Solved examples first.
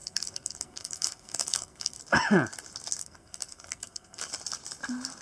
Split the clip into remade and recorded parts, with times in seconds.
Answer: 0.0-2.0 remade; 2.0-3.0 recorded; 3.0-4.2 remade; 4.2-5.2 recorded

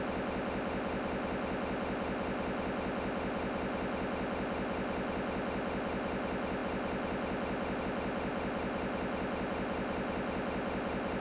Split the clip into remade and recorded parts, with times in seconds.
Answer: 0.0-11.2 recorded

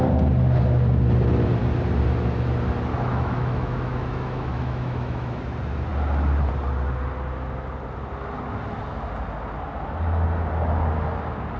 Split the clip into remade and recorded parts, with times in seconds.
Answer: 0.0-2.9 recorded; 2.9-5.4 remade; 5.4-11.6 recorded